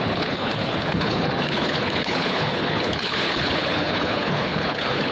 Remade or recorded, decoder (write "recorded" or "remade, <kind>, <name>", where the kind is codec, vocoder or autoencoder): remade, codec, HILCodec